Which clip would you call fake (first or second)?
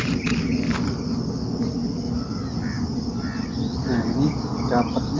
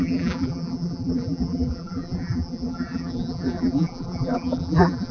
second